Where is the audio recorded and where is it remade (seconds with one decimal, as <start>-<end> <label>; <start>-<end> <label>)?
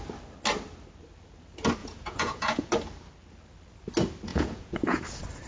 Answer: 0.0-1.8 recorded; 1.8-2.7 remade; 2.7-4.3 recorded; 4.3-5.0 remade; 5.0-5.5 recorded